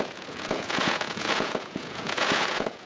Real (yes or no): no